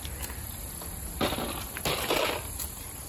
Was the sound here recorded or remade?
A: remade